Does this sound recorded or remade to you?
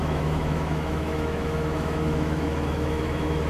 remade